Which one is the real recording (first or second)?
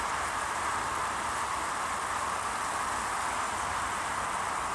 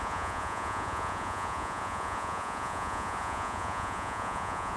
first